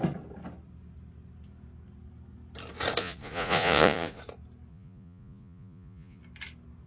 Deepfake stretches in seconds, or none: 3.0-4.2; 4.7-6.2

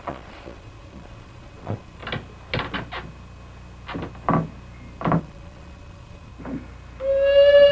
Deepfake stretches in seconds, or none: 0.0-2.0; 5.2-6.3

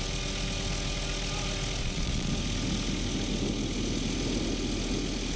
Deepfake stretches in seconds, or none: 1.8-2.3

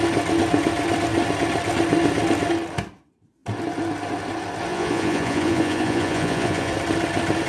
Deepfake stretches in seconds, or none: 4.7-6.7

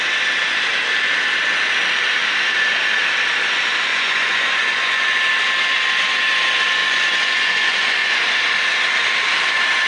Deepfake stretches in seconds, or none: 3.9-5.2; 6.8-8.2

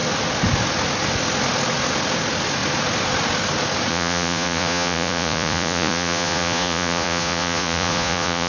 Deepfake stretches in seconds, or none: 3.9-8.5

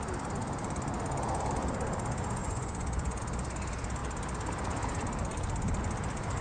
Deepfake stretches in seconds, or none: 2.4-3.2